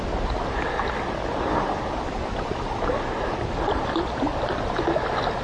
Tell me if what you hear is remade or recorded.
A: recorded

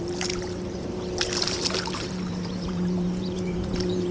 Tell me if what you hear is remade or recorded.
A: remade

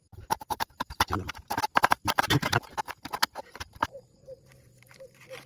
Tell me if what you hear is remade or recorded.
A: remade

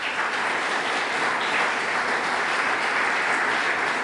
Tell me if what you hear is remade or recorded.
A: recorded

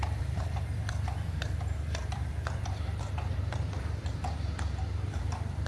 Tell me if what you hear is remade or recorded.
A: remade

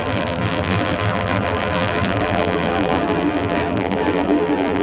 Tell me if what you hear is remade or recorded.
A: remade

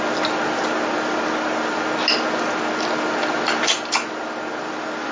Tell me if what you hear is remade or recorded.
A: recorded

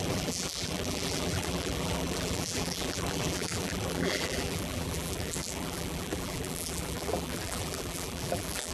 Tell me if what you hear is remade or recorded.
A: remade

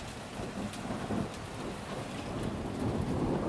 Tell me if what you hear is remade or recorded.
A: recorded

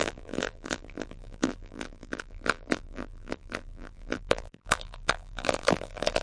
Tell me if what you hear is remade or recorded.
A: remade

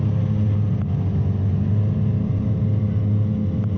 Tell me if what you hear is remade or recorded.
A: recorded